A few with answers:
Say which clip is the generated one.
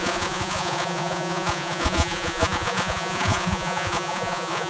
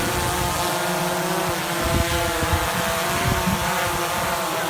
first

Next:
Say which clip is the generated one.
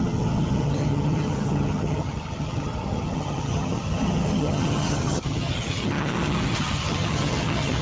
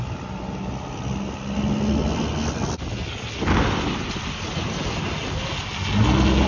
first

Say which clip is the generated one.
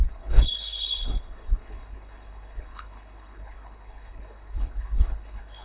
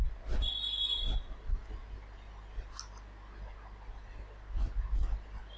first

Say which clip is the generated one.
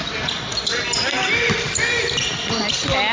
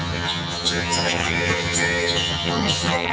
second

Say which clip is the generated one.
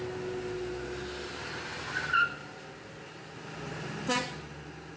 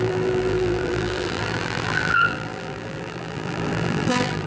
second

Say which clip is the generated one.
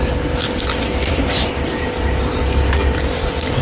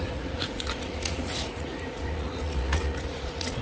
second